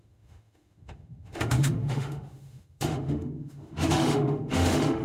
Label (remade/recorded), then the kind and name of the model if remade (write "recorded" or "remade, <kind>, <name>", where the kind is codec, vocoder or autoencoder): remade, autoencoder, DAC-VAE